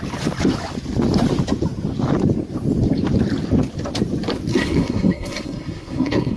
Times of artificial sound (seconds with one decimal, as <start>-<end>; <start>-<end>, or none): 4.5-6.4